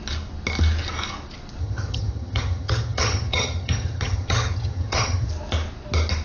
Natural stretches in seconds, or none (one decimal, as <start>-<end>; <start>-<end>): 0.0-1.6; 5.3-6.2

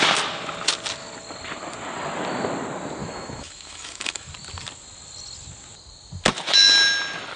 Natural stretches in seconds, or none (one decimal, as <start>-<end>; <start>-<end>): 0.0-3.0; 4.3-7.4